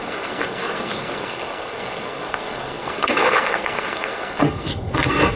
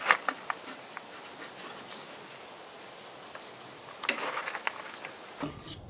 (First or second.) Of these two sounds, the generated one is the first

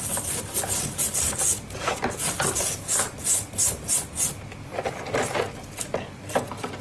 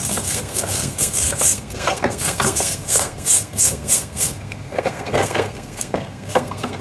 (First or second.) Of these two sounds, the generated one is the second